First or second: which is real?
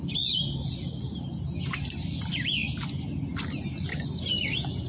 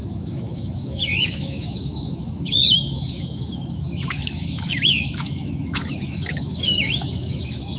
first